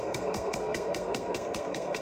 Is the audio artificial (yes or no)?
yes